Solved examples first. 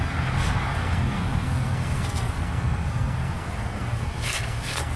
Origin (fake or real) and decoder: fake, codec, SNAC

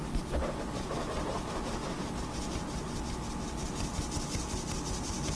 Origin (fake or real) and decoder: real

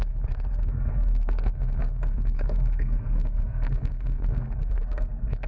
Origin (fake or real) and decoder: fake, codec, SNAC